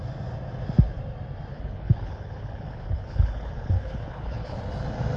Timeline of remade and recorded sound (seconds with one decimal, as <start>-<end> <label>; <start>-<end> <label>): 0.0-1.5 recorded; 1.5-4.6 remade; 4.6-5.2 recorded